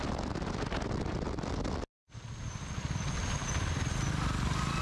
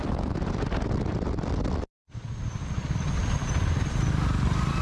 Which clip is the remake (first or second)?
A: second